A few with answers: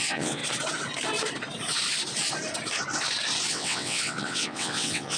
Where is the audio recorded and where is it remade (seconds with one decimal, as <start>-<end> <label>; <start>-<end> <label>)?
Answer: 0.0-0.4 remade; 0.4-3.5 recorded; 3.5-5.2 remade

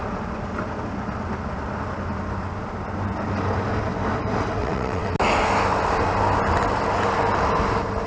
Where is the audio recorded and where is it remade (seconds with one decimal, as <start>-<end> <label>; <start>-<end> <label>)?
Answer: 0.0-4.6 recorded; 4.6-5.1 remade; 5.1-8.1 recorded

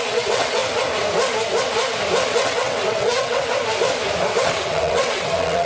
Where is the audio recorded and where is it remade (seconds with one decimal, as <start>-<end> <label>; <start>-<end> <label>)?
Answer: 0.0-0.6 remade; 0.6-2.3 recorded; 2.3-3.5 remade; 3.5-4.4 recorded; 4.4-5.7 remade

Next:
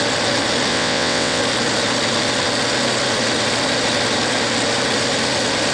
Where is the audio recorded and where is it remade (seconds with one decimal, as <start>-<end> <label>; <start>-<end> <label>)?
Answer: 0.0-0.7 recorded; 0.7-1.4 remade; 1.4-5.7 recorded